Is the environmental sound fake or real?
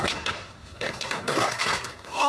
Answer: fake